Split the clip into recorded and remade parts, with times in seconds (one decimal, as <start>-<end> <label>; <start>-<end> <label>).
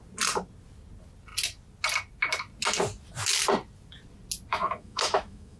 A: 0.0-4.5 recorded; 4.5-5.6 remade